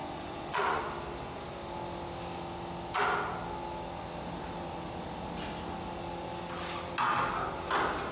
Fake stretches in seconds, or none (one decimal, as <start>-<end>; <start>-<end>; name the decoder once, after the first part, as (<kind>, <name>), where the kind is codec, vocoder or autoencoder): 0.0-0.8 (vocoder, Vocos)

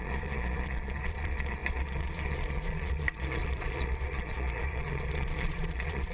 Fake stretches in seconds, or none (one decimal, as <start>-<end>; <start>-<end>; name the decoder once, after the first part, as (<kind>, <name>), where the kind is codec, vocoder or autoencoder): 0.0-6.1 (vocoder, Vocos)

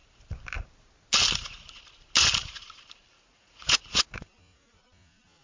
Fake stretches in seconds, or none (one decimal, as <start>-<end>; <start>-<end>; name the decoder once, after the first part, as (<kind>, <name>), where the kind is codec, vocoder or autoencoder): 3.2-5.4 (vocoder, Vocos)

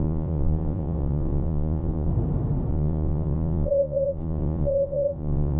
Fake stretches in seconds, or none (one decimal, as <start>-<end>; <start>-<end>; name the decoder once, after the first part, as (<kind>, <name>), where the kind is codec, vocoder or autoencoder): 0.0-2.1 (vocoder, Vocos); 2.7-5.6

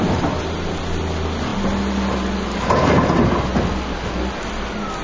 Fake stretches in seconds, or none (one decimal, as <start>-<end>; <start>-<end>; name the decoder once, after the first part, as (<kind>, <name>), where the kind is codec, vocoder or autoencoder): none